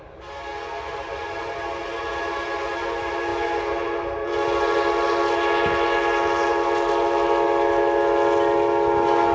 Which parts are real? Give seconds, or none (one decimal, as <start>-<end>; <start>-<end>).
0.0-9.3